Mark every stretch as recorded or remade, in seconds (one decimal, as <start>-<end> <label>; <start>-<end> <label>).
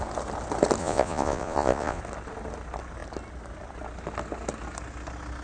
0.0-0.8 recorded; 0.8-2.0 remade; 2.0-5.4 recorded